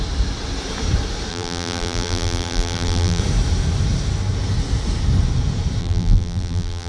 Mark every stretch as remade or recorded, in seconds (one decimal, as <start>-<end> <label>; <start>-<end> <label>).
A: 0.0-1.3 recorded; 1.3-3.2 remade; 3.2-5.8 recorded; 5.8-6.9 remade